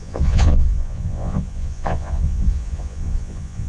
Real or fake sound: fake